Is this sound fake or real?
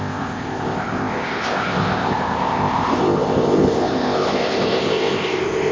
fake